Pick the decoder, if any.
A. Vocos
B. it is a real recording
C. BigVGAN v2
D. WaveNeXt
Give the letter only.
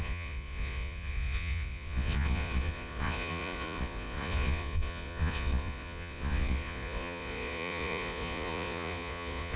A